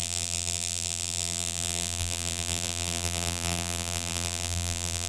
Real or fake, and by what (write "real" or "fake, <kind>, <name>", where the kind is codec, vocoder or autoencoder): fake, vocoder, BigVGAN v2